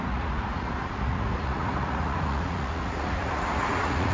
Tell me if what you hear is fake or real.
fake